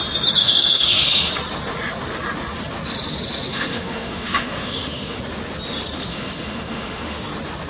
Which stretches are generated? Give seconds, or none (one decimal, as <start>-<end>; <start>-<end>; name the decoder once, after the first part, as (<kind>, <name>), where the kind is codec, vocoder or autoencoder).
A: 0.4-1.3 (autoencoder, DAC-VAE); 3.5-5.2; 6.1-7.3